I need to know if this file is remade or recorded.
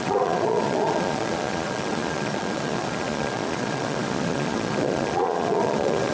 remade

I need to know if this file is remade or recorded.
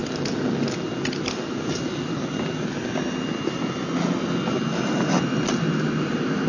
recorded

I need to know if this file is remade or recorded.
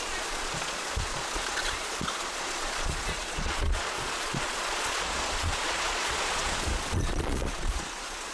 remade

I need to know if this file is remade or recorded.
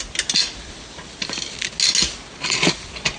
recorded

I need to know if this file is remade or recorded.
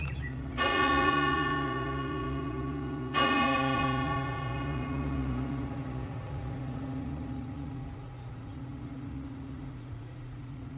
remade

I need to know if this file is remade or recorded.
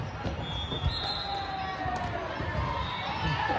recorded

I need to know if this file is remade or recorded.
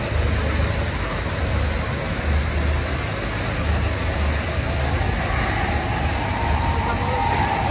recorded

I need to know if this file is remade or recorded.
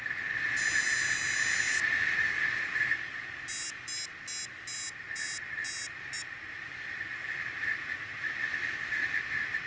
recorded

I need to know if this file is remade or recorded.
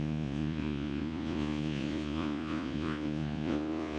remade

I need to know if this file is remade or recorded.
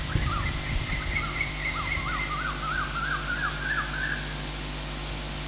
recorded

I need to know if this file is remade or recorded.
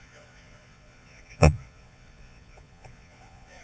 remade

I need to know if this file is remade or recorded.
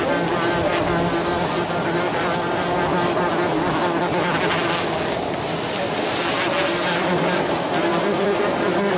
recorded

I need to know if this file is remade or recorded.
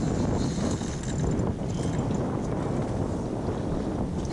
recorded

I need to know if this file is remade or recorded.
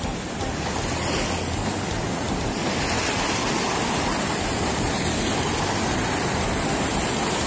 recorded